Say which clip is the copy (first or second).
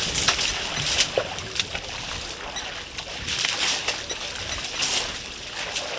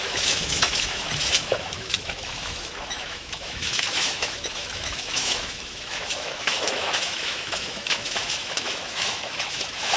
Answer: second